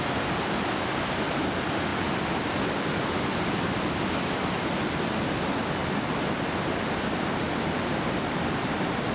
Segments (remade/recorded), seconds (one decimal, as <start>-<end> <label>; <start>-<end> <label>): 0.0-9.1 recorded